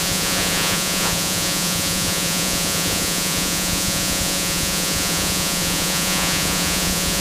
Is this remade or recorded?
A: remade